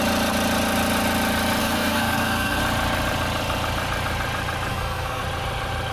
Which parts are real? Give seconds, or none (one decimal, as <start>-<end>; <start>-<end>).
0.0-1.6; 2.6-4.7; 5.2-5.9